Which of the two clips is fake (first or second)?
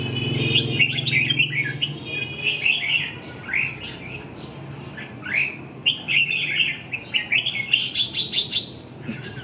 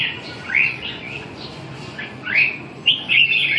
second